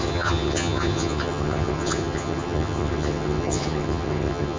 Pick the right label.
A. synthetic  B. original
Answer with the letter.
A